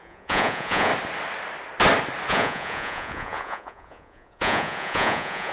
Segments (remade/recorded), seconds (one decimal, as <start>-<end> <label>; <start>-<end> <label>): 0.0-0.9 remade; 0.9-2.3 recorded; 2.3-5.5 remade